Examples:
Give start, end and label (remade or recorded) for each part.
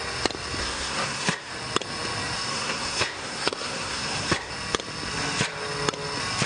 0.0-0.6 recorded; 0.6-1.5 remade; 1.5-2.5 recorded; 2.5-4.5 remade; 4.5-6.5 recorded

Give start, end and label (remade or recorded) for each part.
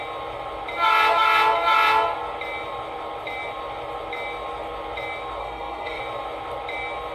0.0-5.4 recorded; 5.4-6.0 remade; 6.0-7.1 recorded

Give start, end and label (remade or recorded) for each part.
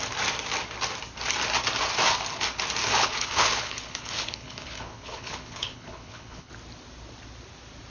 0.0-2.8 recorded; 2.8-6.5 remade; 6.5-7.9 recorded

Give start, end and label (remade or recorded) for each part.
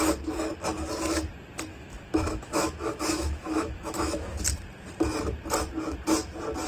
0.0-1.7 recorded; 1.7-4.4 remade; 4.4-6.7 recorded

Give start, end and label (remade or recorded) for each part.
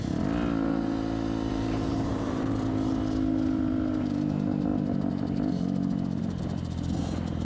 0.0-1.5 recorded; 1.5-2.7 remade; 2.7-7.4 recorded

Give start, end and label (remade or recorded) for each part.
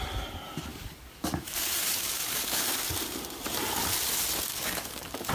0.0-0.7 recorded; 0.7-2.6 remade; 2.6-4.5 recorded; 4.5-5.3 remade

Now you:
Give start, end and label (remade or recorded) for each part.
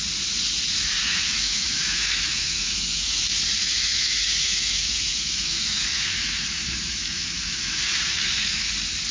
0.0-1.0 recorded; 1.0-3.2 remade; 3.2-3.6 recorded; 3.6-8.7 remade; 8.7-9.1 recorded